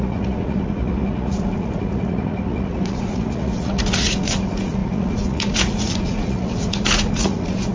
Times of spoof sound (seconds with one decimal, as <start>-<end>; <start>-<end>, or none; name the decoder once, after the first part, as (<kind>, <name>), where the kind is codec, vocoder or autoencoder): 0.0-7.7 (vocoder, Vocos)